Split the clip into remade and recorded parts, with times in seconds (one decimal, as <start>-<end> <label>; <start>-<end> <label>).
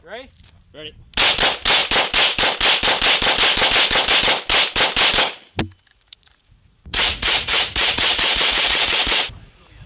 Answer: 0.0-5.9 recorded; 5.9-9.9 remade